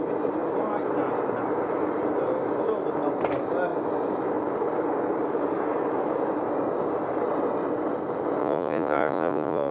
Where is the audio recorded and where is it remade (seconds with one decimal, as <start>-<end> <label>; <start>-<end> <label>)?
0.0-8.4 recorded; 8.4-9.7 remade